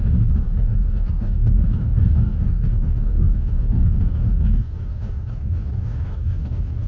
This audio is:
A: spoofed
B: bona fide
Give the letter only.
A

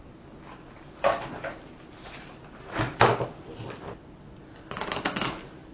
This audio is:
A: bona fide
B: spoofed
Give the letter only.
A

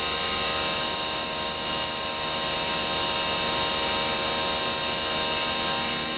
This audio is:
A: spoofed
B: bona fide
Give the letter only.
B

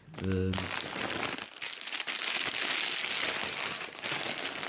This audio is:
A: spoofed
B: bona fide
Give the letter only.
B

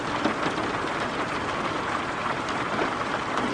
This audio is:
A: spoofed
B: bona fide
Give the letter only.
B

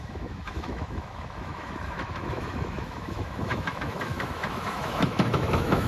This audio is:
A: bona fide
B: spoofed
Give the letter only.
B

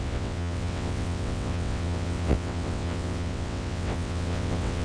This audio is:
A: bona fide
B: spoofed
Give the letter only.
B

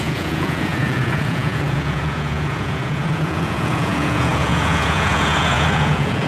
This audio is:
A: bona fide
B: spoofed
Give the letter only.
B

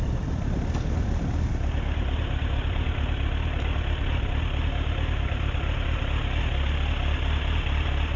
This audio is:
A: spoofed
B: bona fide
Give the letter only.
B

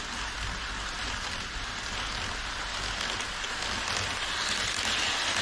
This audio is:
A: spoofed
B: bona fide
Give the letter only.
B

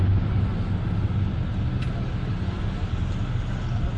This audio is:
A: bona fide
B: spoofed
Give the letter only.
A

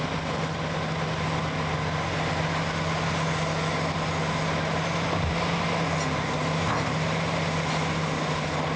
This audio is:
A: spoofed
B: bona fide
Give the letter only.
B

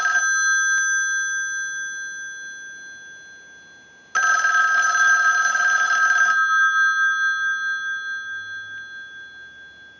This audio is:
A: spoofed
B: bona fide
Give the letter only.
B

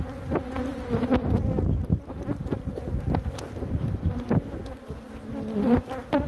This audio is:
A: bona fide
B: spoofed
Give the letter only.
A